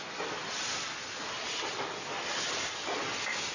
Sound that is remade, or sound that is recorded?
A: recorded